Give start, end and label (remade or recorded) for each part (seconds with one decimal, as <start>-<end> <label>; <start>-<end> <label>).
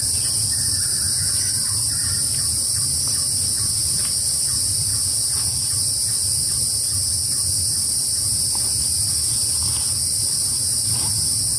0.0-11.6 recorded